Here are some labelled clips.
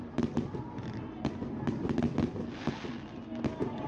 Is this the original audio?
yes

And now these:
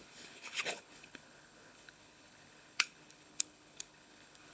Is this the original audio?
no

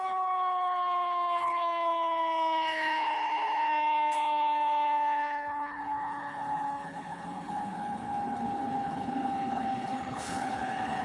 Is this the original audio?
no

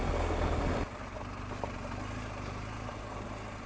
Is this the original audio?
yes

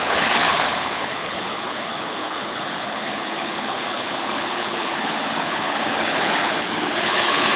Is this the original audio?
no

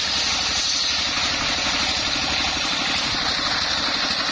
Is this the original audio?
yes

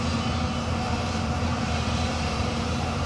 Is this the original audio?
no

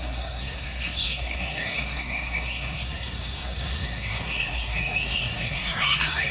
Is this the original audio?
no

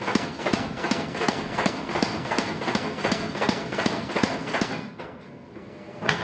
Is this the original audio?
no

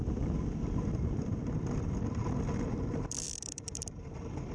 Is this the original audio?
no